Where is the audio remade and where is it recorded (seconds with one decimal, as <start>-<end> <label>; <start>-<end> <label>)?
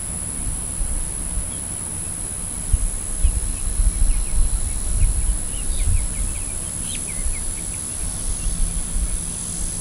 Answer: 0.0-9.8 recorded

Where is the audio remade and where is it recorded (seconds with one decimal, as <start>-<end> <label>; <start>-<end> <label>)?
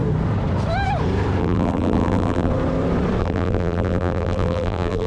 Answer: 0.0-1.4 recorded; 1.4-2.5 remade; 2.5-3.2 recorded; 3.2-5.1 remade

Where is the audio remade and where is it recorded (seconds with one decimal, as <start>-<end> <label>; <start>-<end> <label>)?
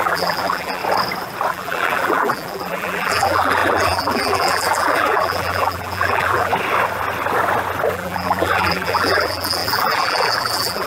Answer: 0.0-0.8 remade; 0.8-1.5 recorded; 1.5-6.5 remade; 6.5-7.9 recorded; 7.9-10.9 remade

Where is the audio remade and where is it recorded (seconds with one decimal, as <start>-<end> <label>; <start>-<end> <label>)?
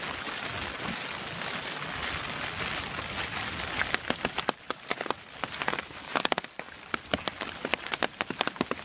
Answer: 0.0-8.8 recorded